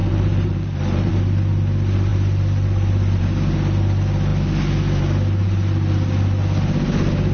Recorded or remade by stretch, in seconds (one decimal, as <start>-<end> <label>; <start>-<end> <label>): 0.0-1.1 remade; 1.1-7.3 recorded